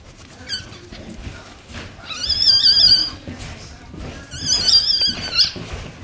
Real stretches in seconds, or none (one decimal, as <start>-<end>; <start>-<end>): 0.0-6.0